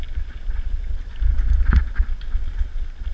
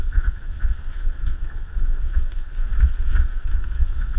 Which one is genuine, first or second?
first